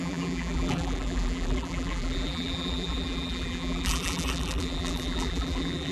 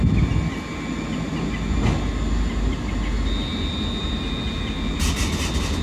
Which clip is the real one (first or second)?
second